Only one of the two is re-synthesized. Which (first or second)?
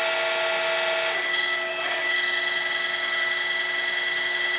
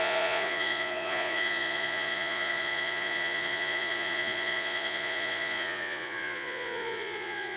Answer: second